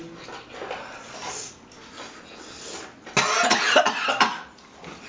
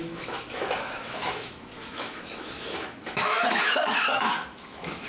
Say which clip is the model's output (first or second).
second